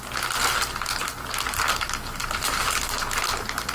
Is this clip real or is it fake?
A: real